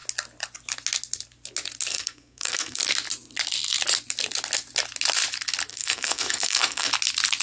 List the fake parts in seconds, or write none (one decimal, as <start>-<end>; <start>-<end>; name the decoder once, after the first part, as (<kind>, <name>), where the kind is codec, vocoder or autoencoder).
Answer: 1.9-2.8 (codec, SNAC); 5.7-6.9